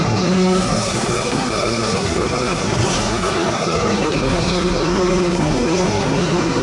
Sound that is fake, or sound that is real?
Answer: fake